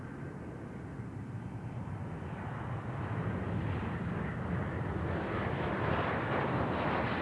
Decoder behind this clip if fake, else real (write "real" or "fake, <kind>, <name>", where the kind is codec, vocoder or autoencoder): real